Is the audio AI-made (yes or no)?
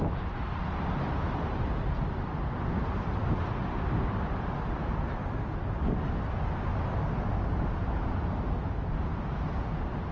no